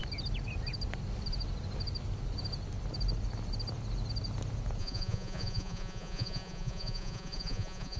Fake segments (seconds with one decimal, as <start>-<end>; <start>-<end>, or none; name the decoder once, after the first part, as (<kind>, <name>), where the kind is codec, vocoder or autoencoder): 4.8-8.0 (vocoder, Vocos)